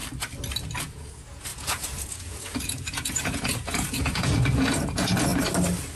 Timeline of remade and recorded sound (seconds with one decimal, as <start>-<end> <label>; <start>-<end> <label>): 0.0-0.8 recorded; 0.8-5.3 remade; 5.3-6.0 recorded